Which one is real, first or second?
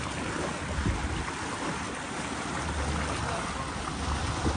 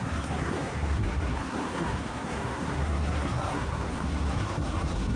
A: first